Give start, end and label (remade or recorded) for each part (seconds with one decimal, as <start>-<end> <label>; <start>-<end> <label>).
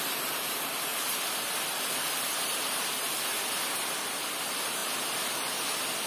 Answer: 0.0-6.1 recorded